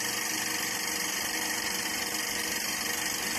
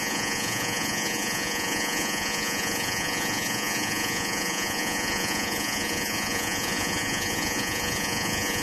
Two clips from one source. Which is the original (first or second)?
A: first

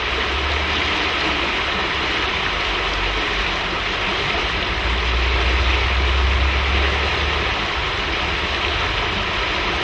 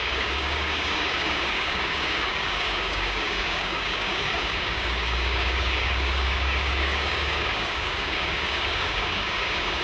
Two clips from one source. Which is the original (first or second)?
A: first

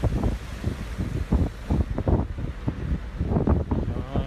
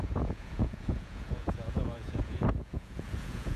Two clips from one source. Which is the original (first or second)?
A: first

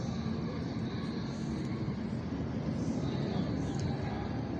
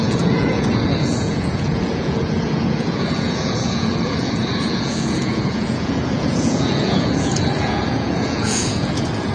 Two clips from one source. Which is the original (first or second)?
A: first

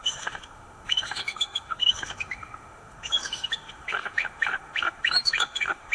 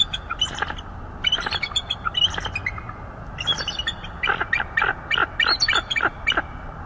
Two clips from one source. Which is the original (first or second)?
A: second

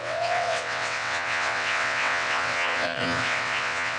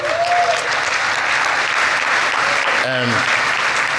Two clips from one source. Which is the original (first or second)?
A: second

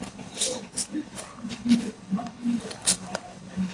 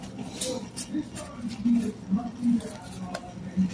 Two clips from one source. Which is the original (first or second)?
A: second